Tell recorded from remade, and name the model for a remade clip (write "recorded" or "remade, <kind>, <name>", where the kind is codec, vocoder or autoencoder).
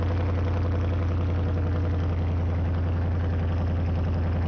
recorded